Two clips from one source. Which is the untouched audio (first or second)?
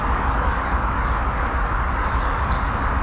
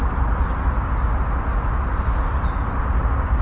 second